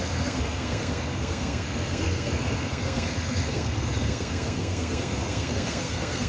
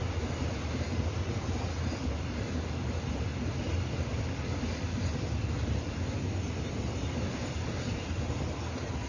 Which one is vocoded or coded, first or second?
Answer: first